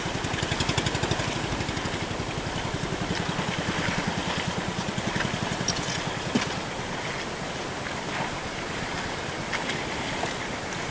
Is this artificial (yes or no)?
no